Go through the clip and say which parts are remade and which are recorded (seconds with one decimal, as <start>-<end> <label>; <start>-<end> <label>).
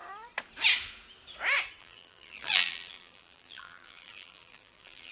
0.0-1.8 recorded; 1.8-5.1 remade